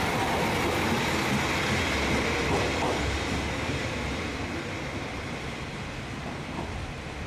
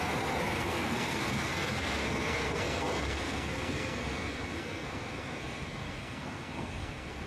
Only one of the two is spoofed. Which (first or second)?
second